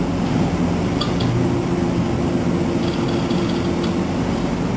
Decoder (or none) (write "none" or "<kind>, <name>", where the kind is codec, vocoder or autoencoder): none